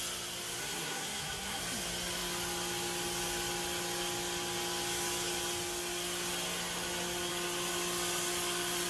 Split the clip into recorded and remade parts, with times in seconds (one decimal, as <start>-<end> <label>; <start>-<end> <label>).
0.0-0.6 recorded; 0.6-1.6 remade; 1.6-8.9 recorded